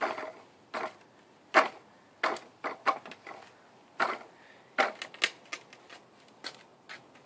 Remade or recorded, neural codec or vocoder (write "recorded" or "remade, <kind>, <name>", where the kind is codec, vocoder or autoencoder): recorded